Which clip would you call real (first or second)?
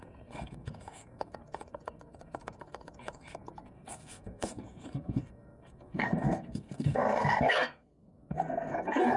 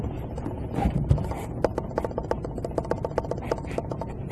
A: second